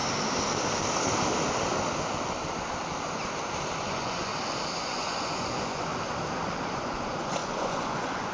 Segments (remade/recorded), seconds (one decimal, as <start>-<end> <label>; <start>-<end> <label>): 0.0-3.8 recorded; 3.8-4.3 remade; 4.3-4.8 recorded; 4.8-5.9 remade; 5.9-6.7 recorded; 6.7-8.3 remade